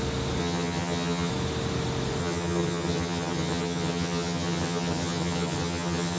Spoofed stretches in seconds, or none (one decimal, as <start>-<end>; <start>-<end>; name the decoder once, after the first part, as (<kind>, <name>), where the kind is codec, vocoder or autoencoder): 0.4-1.3 (vocoder, HiFi-GAN); 2.2-6.2